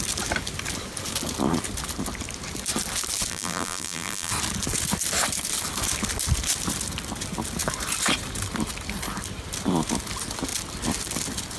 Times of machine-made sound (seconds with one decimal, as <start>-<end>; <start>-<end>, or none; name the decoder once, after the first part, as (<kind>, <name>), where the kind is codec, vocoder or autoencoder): 3.3-4.3 (vocoder, BigVGAN v2)